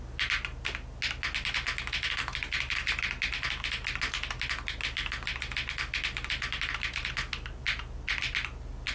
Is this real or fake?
real